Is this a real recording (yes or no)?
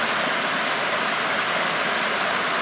yes